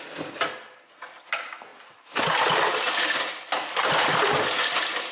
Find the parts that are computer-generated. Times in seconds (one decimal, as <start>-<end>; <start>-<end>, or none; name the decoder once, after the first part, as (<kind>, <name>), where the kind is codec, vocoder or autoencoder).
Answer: none

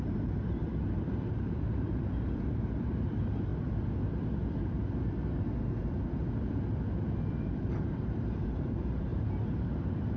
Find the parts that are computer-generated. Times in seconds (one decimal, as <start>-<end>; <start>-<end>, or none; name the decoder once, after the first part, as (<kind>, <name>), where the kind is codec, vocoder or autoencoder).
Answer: 0.0-3.5 (vocoder, BigVGAN v2); 7.3-10.2